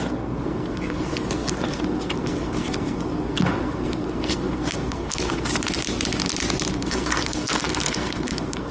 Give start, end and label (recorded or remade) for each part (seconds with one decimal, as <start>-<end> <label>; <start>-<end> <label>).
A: 0.0-5.5 remade; 5.5-6.7 recorded; 6.7-8.7 remade